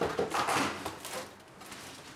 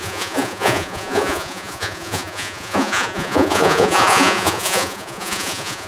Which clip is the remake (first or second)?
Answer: second